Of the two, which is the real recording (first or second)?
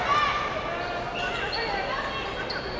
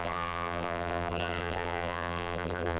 first